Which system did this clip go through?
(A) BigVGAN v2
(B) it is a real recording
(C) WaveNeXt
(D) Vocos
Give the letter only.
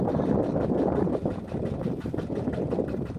A